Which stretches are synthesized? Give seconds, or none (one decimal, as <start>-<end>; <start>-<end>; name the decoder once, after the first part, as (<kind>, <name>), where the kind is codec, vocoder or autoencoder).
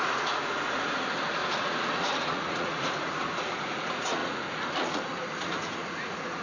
0.0-6.4 (vocoder, Vocos)